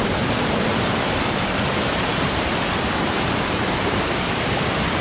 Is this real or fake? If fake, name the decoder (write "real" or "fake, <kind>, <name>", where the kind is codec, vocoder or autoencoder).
fake, vocoder, BigVGAN v2